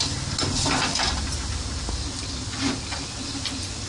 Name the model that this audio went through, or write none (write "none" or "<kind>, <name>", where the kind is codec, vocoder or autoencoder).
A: none